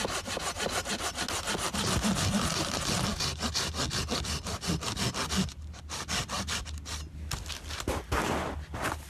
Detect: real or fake real